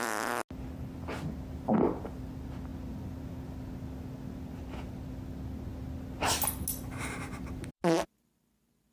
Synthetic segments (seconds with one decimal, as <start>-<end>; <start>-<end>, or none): none